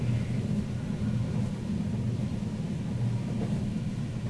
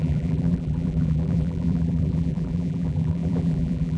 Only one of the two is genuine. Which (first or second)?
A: first